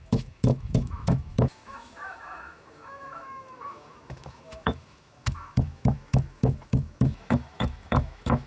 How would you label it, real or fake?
fake